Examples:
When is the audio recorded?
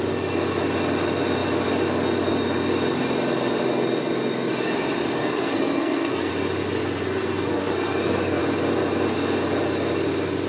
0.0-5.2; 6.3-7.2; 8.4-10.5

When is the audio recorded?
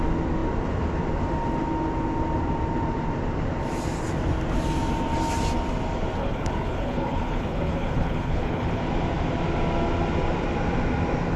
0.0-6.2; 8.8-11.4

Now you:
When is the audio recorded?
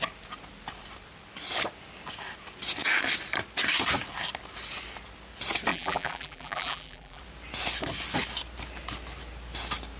0.0-5.7; 7.2-10.0